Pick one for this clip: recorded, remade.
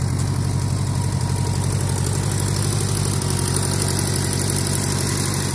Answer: recorded